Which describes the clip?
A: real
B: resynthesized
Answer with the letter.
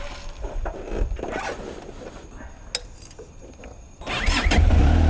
A